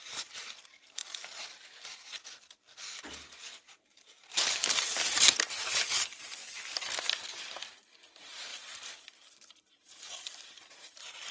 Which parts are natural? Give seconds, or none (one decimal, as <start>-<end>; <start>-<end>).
1.0-3.8; 6.4-7.7